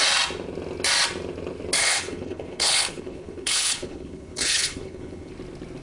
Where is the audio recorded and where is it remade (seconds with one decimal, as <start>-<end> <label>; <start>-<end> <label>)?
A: 0.0-1.8 recorded; 1.8-5.3 remade; 5.3-5.8 recorded